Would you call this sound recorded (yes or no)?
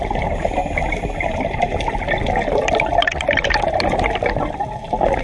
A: yes